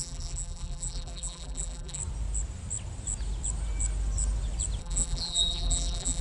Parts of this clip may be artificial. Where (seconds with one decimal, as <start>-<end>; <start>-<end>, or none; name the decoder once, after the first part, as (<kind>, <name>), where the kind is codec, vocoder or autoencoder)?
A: 0.0-2.0 (vocoder, BigVGAN v2); 4.8-6.2